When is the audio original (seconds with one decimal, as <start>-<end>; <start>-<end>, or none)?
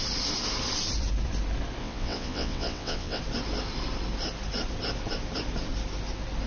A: 0.0-1.8; 3.2-6.5